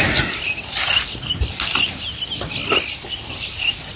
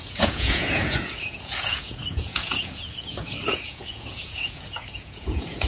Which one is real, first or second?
first